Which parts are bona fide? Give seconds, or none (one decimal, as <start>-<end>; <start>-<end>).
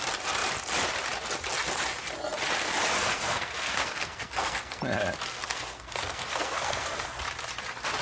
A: 0.0-3.0; 4.8-5.3; 7.2-8.0